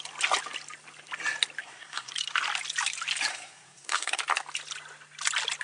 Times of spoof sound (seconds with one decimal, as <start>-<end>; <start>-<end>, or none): 1.6-2.1; 3.3-4.2